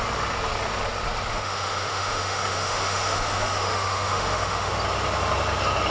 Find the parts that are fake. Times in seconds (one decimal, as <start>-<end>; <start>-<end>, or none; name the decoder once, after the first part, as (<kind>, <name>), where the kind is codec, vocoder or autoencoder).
1.3-4.7 (autoencoder, DAC-VAE)